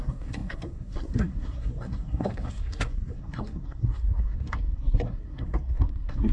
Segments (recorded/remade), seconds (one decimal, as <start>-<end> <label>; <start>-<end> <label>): 0.0-6.3 remade